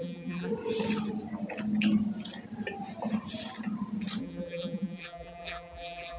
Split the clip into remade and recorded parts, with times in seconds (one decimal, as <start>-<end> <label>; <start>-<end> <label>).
0.0-0.5 remade; 0.5-4.2 recorded; 4.2-6.2 remade